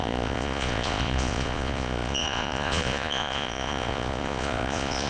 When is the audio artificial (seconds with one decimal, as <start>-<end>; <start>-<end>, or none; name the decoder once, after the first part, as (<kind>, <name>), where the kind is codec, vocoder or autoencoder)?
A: 0.0-5.1 (vocoder, Vocos)